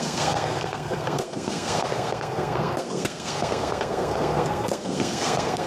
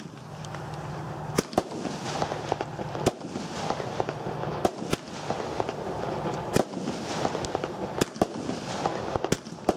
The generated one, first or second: first